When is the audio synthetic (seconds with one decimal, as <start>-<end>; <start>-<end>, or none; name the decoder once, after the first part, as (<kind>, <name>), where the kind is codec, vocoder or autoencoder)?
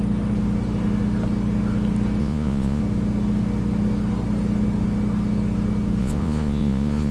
2.2-2.8 (vocoder, Vocos); 6.0-7.1